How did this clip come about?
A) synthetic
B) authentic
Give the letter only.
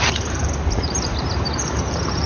A